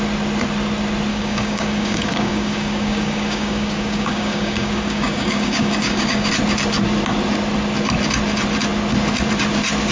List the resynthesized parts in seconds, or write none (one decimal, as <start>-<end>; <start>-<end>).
1.1-6.3